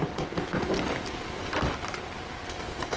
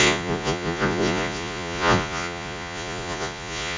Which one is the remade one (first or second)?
second